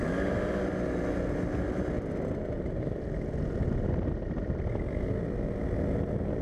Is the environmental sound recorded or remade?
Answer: recorded